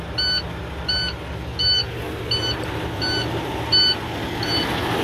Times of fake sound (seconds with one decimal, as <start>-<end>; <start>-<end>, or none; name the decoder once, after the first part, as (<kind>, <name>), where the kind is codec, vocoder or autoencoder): none